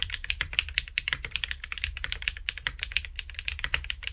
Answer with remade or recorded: remade